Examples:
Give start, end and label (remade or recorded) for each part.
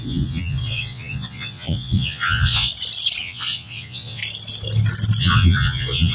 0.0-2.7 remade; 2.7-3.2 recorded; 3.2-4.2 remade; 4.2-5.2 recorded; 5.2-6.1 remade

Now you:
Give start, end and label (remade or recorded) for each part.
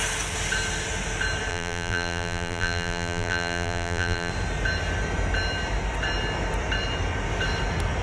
0.0-1.5 recorded; 1.5-4.3 remade; 4.3-8.0 recorded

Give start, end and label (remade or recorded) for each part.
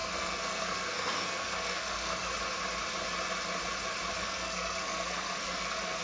0.0-2.3 remade; 2.3-4.1 recorded; 4.1-6.0 remade